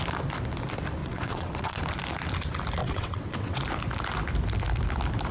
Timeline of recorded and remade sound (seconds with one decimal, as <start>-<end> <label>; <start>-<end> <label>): 0.0-1.0 recorded; 1.0-1.8 remade; 1.8-2.8 recorded; 2.8-3.6 remade; 3.6-5.3 recorded